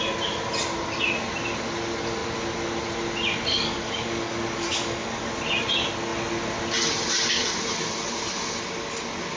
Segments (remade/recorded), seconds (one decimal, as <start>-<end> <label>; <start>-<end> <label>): 0.0-3.5 recorded; 3.5-5.3 remade; 5.3-9.4 recorded